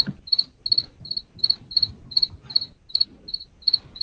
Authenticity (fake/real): real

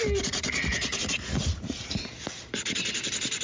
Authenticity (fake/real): real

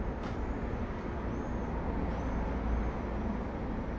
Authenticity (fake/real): real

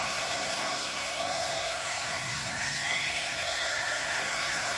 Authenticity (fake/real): fake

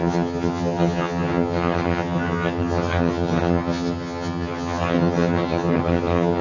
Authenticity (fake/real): fake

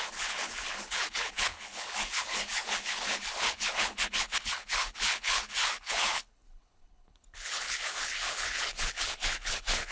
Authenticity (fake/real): fake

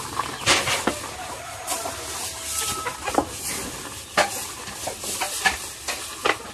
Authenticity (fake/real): real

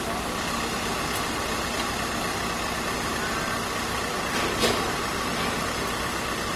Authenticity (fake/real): real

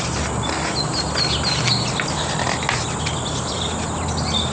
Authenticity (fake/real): real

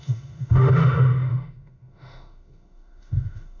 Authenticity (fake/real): fake